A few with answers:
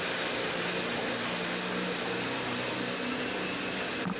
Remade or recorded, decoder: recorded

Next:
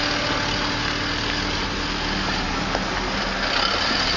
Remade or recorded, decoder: recorded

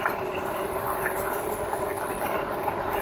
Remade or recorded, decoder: recorded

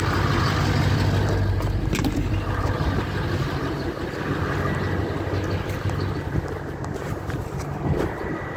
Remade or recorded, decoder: recorded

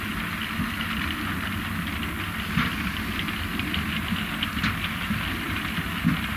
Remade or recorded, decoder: recorded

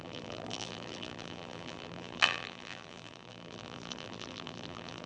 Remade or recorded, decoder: remade, vocoder, BigVGAN v2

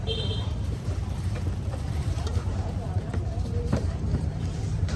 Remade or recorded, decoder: remade, vocoder, BigVGAN v2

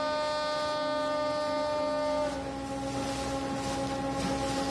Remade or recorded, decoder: recorded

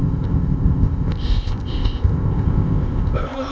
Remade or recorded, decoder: remade, codec, ZipCodec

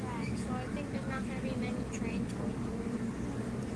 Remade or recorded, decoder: recorded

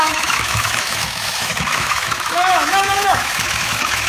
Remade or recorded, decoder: remade, autoencoder, DAC-VAE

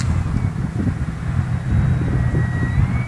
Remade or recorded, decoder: recorded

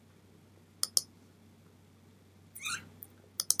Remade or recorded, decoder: recorded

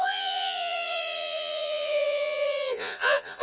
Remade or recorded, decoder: remade, vocoder, Vocos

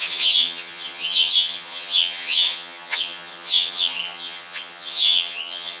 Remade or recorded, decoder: remade, vocoder, HiFi-GAN